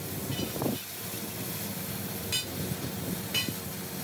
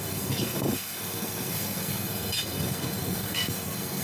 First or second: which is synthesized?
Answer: second